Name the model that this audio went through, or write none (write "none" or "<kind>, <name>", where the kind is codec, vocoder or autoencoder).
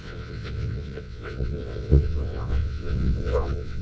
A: vocoder, WaveNeXt